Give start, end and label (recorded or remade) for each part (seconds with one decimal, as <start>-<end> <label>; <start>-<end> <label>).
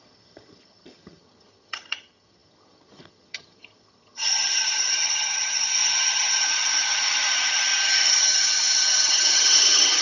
0.0-10.0 remade